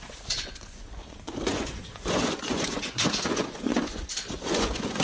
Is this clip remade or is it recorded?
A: remade